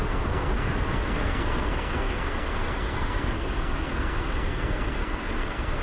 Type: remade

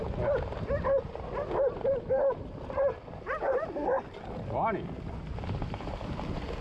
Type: recorded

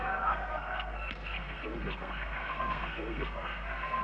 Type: remade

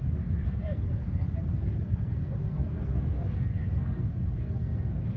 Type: remade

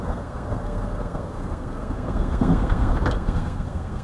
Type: remade